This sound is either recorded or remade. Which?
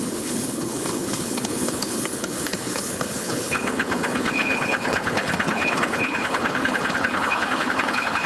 remade